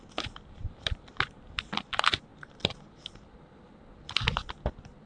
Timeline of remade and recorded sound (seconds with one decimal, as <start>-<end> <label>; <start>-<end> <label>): 0.0-0.6 recorded; 0.6-1.1 remade; 1.1-5.1 recorded